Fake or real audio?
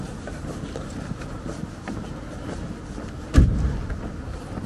real